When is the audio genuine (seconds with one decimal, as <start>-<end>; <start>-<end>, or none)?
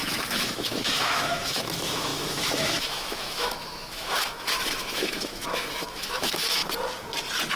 6.6-7.6